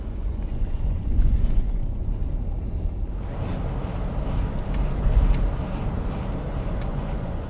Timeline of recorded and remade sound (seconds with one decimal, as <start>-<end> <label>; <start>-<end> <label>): 0.0-2.2 remade; 2.2-6.6 recorded; 6.6-7.5 remade